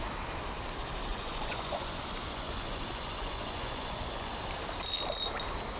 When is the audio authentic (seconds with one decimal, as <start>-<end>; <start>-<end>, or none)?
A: 0.0-1.1; 4.3-5.8